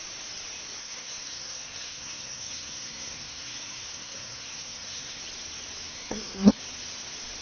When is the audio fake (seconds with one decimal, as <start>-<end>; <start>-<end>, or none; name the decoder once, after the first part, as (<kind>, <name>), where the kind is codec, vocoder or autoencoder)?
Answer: 0.8-5.2 (codec, SNAC); 5.9-6.6